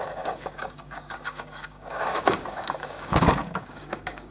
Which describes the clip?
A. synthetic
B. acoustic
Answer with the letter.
A